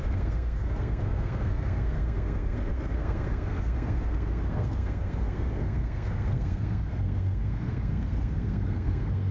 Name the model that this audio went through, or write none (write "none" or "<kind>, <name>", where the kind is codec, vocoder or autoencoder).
codec, SNAC